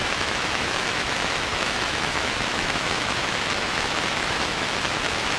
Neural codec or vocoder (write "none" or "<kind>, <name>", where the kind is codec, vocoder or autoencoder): autoencoder, DAC-VAE